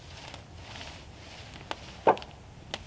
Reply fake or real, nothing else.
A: real